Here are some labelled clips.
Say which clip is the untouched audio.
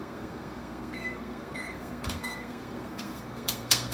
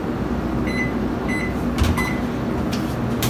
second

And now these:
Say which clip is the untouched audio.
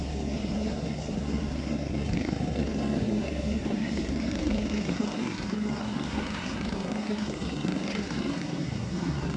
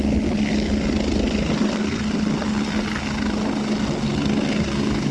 second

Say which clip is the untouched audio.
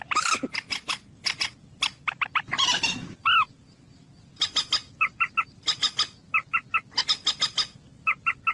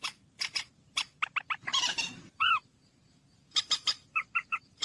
first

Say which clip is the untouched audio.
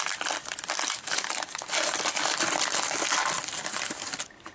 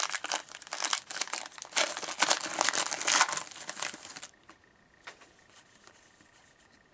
second